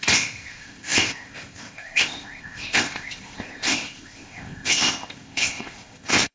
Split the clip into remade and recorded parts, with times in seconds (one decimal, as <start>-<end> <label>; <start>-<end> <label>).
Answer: 0.0-6.3 remade